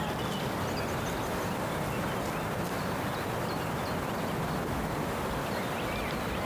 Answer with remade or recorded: recorded